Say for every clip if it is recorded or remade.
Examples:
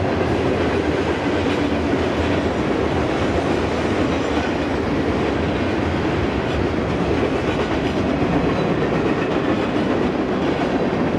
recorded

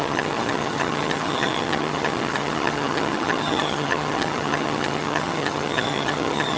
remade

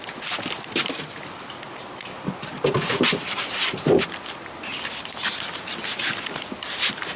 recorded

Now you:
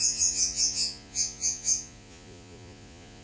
remade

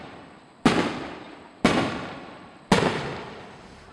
recorded